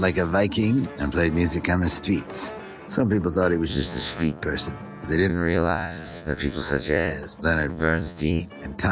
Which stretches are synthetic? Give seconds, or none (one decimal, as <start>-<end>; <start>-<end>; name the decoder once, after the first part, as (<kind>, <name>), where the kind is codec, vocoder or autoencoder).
3.7-4.4 (vocoder, Vocos); 5.3-7.1; 7.7-8.4